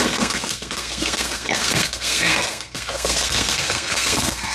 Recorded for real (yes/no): no